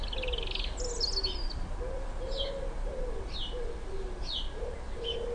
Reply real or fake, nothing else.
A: real